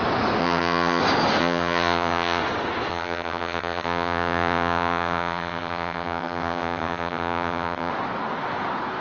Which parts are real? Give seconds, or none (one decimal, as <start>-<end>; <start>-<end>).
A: 0.0-0.4; 1.0-1.4; 2.4-2.9; 7.9-9.0